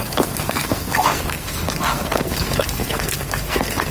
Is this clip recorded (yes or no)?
no